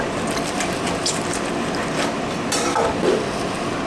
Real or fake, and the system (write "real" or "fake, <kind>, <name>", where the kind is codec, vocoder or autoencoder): real